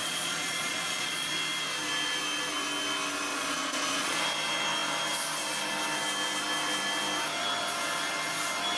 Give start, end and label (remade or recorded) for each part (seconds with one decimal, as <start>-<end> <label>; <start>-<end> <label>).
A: 0.0-1.3 remade; 1.3-3.3 recorded; 3.3-4.2 remade; 4.2-8.8 recorded

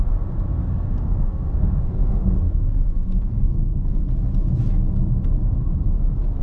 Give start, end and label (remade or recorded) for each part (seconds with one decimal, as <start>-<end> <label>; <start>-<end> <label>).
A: 0.0-0.6 recorded; 0.6-4.0 remade; 4.0-6.4 recorded

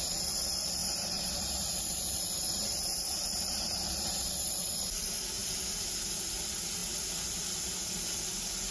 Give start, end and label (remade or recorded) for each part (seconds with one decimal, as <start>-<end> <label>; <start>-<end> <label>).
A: 0.0-0.8 recorded; 0.8-4.7 remade; 4.7-8.7 recorded